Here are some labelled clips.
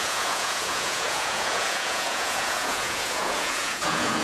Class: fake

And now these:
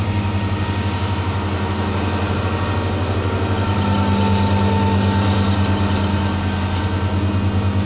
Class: real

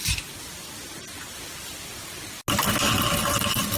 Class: real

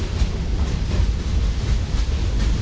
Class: real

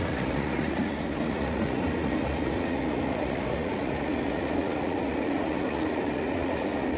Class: fake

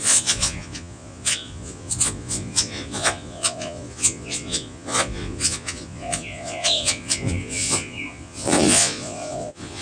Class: fake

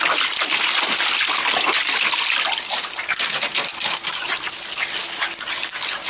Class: real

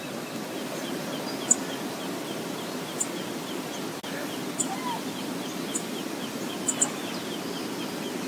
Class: real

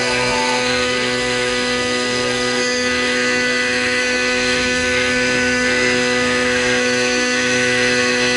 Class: fake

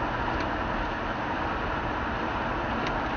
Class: real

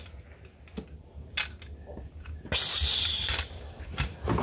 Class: real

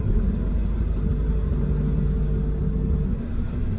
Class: real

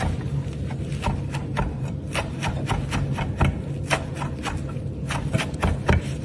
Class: real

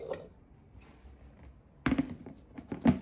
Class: real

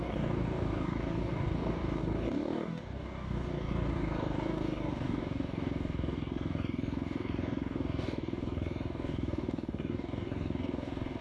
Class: fake